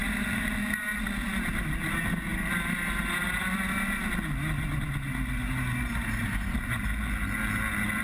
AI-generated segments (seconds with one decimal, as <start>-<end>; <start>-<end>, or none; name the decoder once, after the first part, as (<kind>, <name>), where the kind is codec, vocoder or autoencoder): none